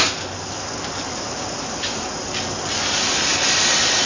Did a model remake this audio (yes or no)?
no